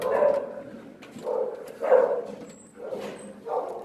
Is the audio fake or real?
real